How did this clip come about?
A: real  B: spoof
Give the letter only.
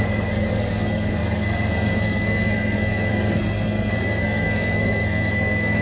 B